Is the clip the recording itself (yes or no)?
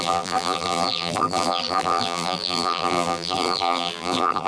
no